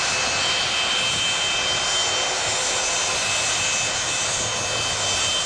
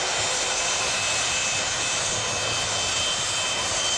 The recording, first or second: first